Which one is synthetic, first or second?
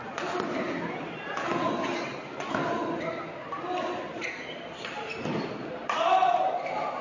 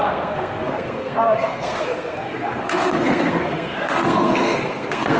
second